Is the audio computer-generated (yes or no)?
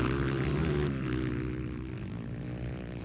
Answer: no